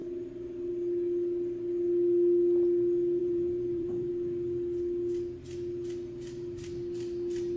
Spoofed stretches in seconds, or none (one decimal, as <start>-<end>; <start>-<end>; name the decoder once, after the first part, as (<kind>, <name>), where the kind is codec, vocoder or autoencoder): 3.2-4.1 (vocoder, BigVGAN v2)